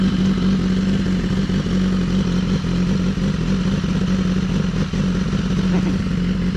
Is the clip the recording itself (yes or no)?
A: yes